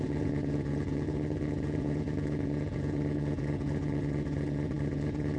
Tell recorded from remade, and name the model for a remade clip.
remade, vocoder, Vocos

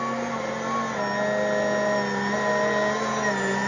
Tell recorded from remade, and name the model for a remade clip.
recorded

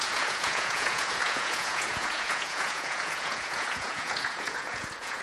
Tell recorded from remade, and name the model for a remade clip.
remade, vocoder, Vocos